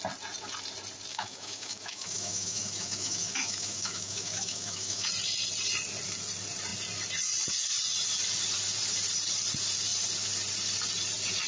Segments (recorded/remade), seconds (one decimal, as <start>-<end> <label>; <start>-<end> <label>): 0.0-1.1 recorded; 1.1-5.1 remade; 5.1-11.5 recorded